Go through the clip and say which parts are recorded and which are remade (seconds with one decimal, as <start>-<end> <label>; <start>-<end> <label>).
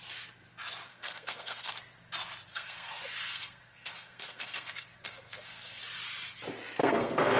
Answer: 0.0-0.9 recorded; 0.9-1.7 remade; 1.7-2.5 recorded; 2.5-5.8 remade; 5.8-6.8 recorded; 6.8-7.4 remade